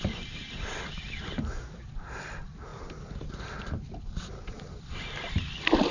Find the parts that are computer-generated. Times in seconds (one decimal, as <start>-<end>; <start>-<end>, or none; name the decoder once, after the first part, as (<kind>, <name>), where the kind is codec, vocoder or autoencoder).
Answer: none